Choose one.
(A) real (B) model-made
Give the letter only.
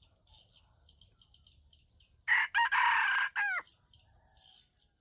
A